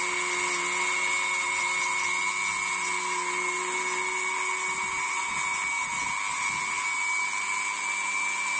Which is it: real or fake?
real